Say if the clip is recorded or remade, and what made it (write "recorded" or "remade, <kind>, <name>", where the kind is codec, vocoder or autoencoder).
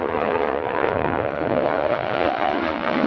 remade, vocoder, Vocos